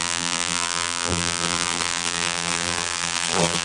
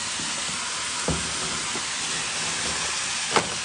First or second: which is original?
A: second